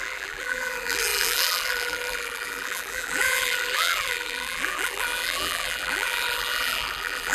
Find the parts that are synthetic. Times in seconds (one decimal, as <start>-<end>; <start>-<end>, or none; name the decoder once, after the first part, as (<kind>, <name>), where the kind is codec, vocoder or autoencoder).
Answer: 0.0-7.3 (vocoder, BigVGAN v2)